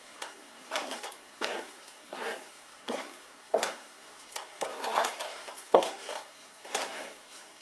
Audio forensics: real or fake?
fake